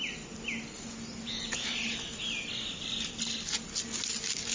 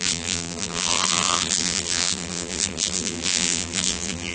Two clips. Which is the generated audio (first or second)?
second